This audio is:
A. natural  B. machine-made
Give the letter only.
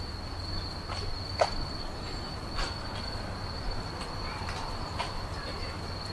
A